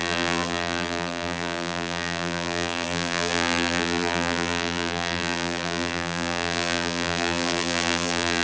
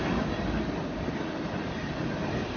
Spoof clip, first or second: first